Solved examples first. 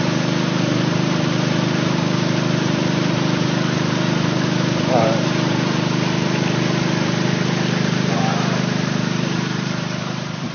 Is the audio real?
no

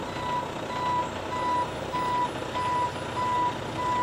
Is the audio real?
yes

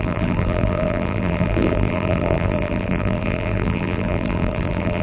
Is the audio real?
no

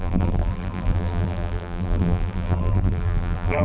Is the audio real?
no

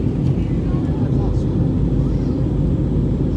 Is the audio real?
yes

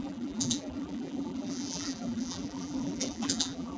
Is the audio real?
no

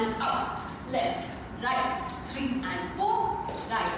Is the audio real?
yes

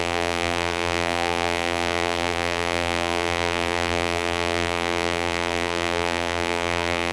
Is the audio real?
no